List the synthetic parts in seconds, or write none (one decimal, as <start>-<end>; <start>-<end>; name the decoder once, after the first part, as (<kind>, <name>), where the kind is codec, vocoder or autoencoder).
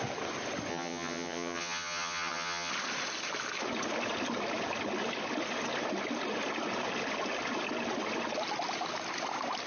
0.7-2.7 (vocoder, HiFi-GAN)